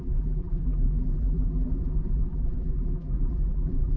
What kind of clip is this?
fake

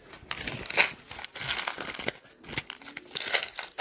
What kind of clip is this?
real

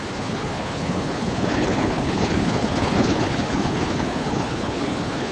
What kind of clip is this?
fake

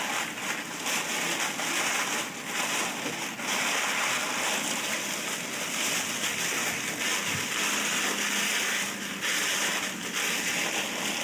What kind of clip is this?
real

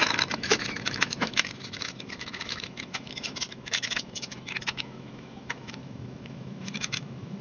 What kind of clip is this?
fake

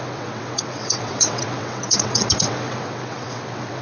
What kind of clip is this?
fake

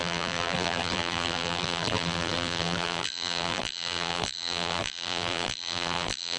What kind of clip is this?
fake